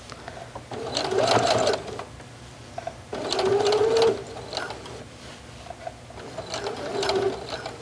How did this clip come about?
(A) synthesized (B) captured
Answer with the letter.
B